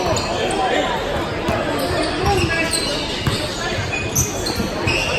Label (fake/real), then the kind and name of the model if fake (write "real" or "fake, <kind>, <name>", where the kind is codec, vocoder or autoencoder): real